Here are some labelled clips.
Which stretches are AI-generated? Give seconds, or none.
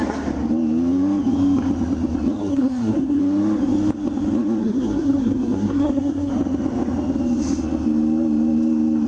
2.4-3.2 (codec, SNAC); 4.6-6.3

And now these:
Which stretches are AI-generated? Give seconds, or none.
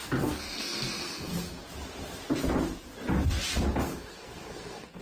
0.0-1.3 (codec, SNAC); 3.8-5.0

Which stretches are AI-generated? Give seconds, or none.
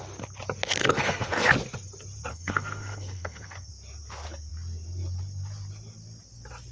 0.8-1.5 (codec, SNAC); 2.3-3.7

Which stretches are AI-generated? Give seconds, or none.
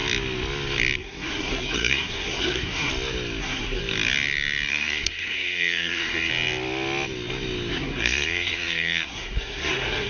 1.0-2.9 (codec, SNAC); 3.4-3.8; 4.7-6.3; 7.7-10.1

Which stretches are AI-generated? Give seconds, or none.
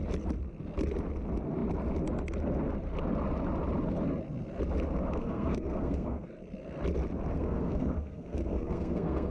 5.2-6.3 (codec, SNAC); 7.3-9.3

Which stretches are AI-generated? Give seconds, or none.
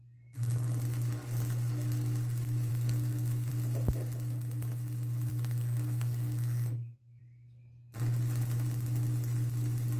2.7-3.5 (codec, SNAC); 5.3-7.2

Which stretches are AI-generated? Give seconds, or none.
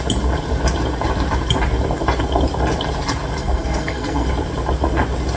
3.4-4.3 (codec, SNAC)